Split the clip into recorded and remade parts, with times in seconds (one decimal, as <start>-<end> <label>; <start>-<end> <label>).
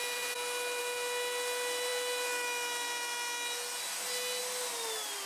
0.0-5.3 recorded